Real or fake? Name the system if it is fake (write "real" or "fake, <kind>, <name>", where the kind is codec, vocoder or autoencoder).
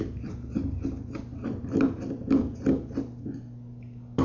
real